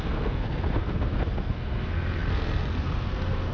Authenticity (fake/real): fake